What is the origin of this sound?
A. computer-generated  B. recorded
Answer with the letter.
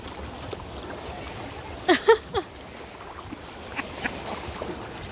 B